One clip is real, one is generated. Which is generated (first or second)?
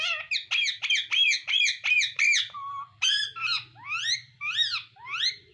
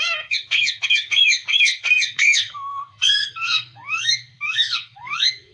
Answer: second